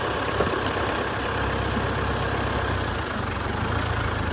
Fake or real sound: real